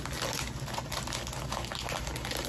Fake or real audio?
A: real